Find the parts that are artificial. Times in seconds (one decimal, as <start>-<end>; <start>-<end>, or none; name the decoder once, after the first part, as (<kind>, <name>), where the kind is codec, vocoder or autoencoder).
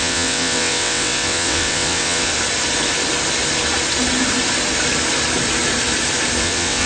0.0-2.3 (vocoder, WaveNeXt); 6.4-6.9